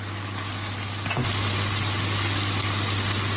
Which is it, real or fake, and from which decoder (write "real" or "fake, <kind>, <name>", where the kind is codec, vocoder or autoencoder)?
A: real